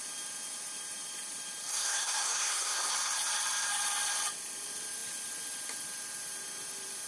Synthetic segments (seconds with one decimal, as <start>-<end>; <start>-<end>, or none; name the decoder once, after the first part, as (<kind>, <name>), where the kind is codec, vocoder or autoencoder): 1.7-2.9 (codec, SNAC)